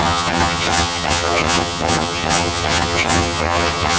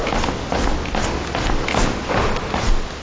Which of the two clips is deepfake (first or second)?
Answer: first